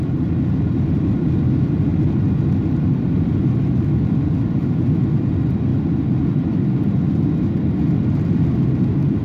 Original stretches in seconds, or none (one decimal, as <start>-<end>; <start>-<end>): 0.0-9.2